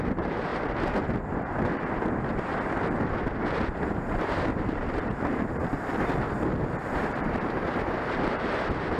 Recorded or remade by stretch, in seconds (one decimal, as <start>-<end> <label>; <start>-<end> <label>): 0.0-0.5 remade; 0.5-3.8 recorded; 3.8-5.6 remade; 5.6-6.6 recorded; 6.6-9.0 remade